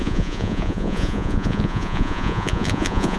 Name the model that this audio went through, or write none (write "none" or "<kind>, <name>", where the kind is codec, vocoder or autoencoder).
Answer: vocoder, Vocos